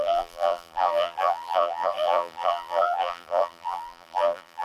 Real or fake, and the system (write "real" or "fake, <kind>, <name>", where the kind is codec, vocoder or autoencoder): fake, vocoder, BigVGAN v2